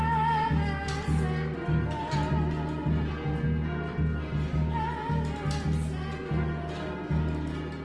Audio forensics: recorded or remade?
recorded